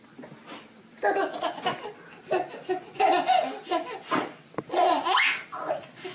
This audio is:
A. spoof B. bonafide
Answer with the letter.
B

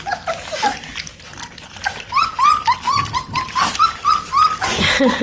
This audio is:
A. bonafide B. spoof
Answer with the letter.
A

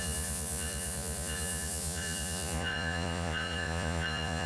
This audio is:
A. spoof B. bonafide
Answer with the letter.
A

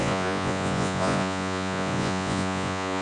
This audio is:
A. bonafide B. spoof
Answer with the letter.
B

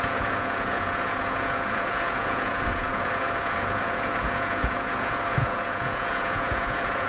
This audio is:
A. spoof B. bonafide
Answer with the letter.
A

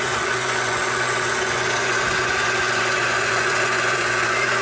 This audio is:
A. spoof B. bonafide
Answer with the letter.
A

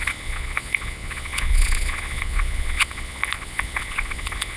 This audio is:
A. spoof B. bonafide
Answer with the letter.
A